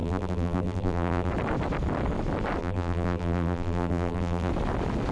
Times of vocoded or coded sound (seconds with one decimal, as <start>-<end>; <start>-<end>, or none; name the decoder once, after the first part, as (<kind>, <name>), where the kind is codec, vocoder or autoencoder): 0.0-1.3 (vocoder, BigVGAN v2); 2.6-4.5